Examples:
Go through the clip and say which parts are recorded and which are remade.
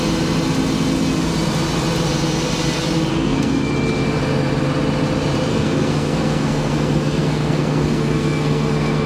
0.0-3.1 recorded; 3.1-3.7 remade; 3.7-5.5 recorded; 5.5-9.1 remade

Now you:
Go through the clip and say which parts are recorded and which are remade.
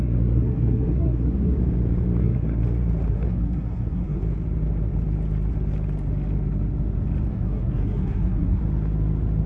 0.0-1.6 remade; 1.6-2.2 recorded; 2.2-2.6 remade; 2.6-3.1 recorded; 3.1-4.2 remade; 4.2-7.3 recorded; 7.3-8.6 remade; 8.6-9.5 recorded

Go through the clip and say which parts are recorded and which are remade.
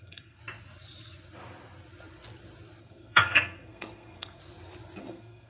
0.0-0.4 remade; 0.4-2.8 recorded; 2.8-4.4 remade; 4.4-5.0 recorded; 5.0-5.5 remade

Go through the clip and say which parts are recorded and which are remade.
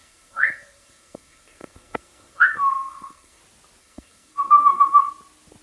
0.0-3.4 remade; 3.4-3.8 recorded; 3.8-5.1 remade; 5.1-5.6 recorded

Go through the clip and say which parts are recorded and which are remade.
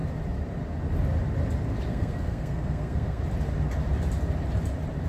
0.0-1.9 recorded; 1.9-3.2 remade; 3.2-5.1 recorded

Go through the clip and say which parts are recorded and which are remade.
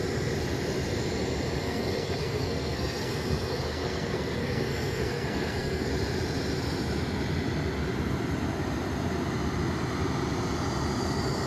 0.0-1.6 recorded; 1.6-5.9 remade; 5.9-11.5 recorded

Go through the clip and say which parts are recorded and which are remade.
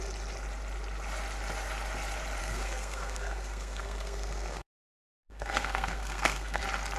0.0-2.4 recorded; 2.4-6.6 remade; 6.6-7.0 recorded